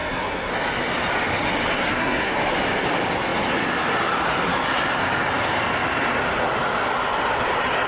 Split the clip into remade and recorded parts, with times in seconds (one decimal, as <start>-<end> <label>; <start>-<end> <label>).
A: 0.0-0.5 remade; 0.5-1.8 recorded; 1.8-2.3 remade; 2.3-7.9 recorded